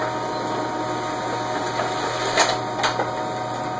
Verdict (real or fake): real